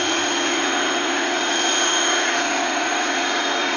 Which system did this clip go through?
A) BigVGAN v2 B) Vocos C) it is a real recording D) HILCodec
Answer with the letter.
B